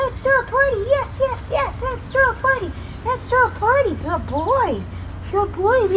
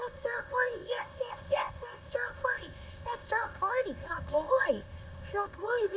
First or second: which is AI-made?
second